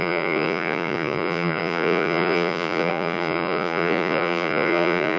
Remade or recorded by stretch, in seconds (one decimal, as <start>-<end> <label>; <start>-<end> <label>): 0.0-5.2 remade